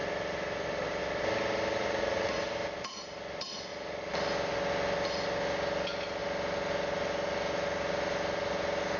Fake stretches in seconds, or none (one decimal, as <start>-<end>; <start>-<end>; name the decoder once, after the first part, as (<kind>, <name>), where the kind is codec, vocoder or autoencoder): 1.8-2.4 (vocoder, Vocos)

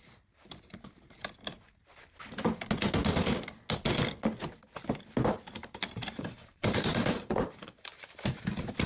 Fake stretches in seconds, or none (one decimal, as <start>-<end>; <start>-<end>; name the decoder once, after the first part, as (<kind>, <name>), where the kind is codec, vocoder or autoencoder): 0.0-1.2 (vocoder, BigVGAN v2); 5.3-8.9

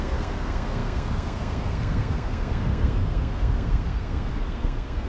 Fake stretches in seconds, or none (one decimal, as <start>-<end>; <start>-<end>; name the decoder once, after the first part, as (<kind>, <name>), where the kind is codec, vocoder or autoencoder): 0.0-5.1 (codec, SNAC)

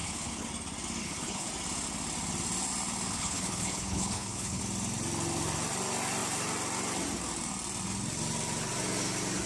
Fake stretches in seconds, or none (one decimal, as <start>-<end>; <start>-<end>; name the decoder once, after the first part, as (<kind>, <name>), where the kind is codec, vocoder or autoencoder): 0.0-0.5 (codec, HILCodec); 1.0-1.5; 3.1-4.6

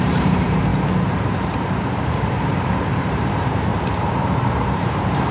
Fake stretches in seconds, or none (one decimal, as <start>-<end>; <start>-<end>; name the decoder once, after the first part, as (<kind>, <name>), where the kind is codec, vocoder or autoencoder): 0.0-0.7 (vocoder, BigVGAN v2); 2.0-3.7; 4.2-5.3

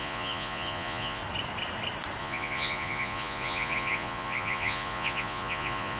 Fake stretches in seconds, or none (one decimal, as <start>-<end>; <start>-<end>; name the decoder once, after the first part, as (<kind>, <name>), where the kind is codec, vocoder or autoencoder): 0.0-1.2 (vocoder, Vocos); 2.2-6.0

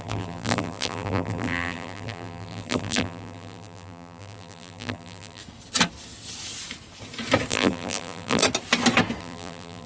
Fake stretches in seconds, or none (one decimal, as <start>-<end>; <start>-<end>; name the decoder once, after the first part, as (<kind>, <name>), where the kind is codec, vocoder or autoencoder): 0.0-5.4 (vocoder, BigVGAN v2); 7.5-8.4; 9.2-9.9

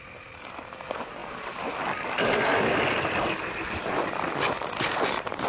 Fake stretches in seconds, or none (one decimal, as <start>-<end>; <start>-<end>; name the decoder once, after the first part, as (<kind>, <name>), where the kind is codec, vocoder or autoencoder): none